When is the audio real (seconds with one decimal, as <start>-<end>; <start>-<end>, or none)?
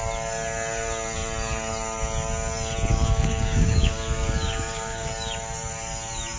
0.0-2.9; 5.1-6.4